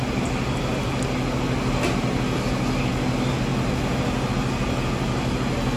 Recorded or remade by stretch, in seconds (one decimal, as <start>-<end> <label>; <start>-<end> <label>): 0.0-5.8 recorded